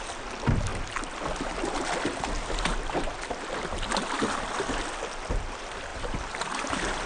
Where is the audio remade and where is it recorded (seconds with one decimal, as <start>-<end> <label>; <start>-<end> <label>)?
0.0-5.9 recorded; 5.9-7.1 remade